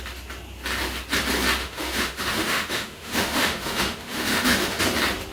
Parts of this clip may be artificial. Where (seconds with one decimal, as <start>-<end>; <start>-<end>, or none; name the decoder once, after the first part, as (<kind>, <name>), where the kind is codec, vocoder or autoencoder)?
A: 1.6-4.8 (autoencoder, DAC-VAE)